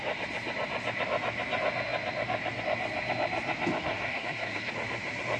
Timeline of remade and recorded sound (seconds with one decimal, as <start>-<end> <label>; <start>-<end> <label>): 0.0-3.8 recorded; 3.8-4.7 remade; 4.7-5.4 recorded